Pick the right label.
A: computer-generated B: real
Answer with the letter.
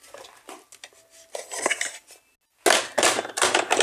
B